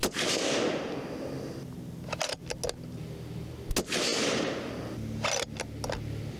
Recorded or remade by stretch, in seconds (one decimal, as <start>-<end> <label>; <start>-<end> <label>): 0.0-4.1 recorded; 4.1-4.7 remade; 4.7-6.4 recorded